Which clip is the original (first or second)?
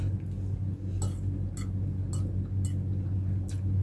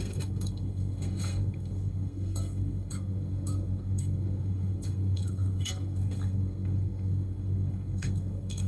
first